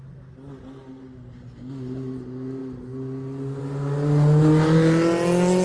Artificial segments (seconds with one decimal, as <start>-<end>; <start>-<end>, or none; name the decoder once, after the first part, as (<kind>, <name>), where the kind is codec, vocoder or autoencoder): none